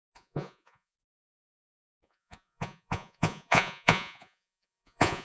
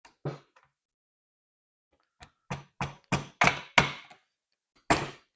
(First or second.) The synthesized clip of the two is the first